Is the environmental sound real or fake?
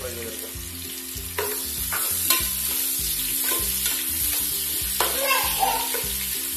real